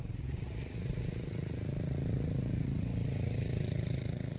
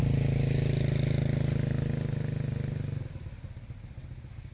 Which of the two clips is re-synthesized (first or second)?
first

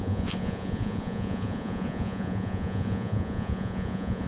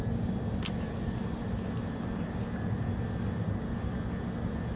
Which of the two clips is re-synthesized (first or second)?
first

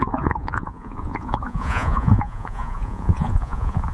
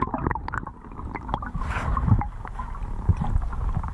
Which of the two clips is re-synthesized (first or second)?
first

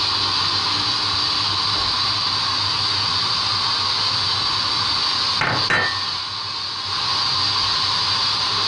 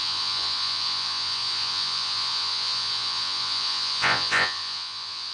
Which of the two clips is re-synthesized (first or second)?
second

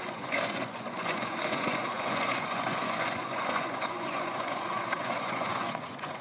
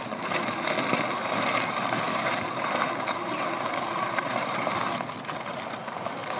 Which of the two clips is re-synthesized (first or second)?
first